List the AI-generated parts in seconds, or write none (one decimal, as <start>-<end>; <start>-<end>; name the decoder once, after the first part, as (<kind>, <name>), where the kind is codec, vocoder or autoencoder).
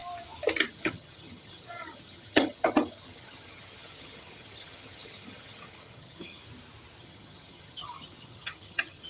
0.7-6.4 (vocoder, HiFi-GAN); 7.0-9.1